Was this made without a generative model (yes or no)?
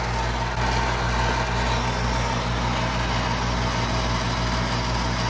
yes